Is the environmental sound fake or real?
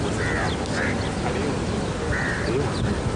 real